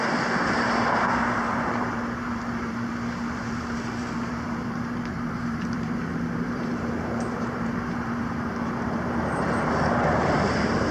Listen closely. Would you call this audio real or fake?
fake